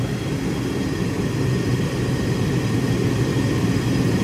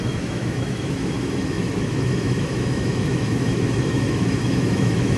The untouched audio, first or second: first